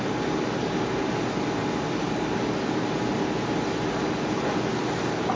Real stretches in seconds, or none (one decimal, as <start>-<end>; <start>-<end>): 0.0-5.4